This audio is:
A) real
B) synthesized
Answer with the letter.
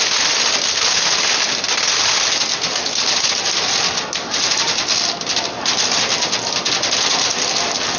A